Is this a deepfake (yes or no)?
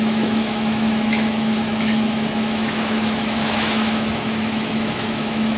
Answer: yes